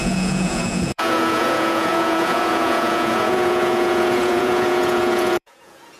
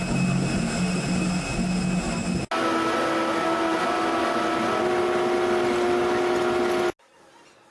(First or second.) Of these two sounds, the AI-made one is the first